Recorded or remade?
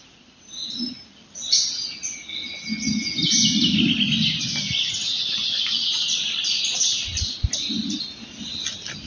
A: recorded